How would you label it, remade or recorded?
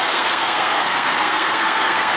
remade